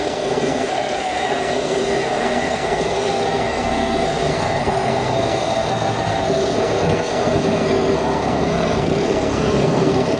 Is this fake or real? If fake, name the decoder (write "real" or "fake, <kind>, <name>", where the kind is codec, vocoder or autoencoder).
fake, codec, SNAC